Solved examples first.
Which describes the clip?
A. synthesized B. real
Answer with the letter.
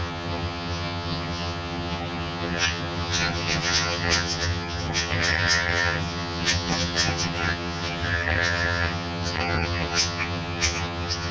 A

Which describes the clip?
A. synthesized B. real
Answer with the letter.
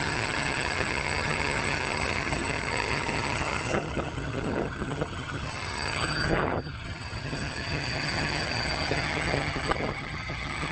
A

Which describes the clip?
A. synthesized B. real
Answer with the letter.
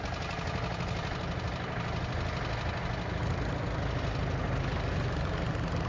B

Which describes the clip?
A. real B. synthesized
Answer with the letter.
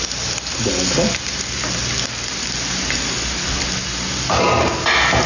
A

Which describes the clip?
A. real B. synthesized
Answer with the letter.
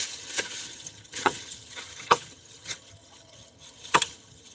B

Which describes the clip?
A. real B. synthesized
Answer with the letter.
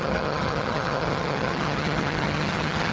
B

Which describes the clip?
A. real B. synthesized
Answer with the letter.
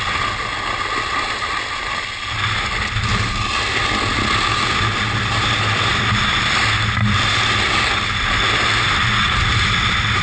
A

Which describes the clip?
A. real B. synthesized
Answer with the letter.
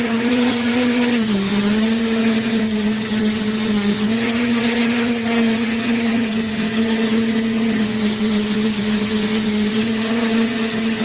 B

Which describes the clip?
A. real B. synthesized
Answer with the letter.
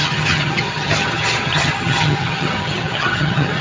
B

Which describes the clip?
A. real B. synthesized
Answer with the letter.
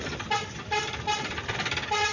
A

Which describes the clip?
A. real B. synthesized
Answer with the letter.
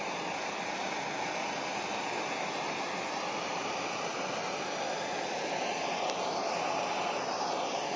A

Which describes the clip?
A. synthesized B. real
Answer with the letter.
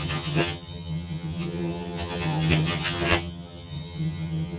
A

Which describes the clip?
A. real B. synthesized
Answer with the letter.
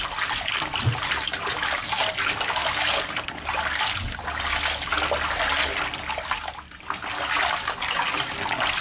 A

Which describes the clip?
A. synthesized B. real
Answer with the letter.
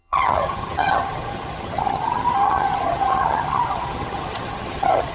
A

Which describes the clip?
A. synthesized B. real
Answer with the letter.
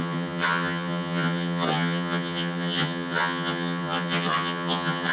A